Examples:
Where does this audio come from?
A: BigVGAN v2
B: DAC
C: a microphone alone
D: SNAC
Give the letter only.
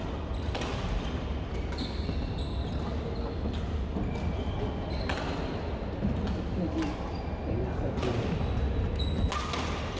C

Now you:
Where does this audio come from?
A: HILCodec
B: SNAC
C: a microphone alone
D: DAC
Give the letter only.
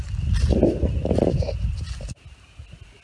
C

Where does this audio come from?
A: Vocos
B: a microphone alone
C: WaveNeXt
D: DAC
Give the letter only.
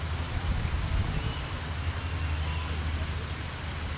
B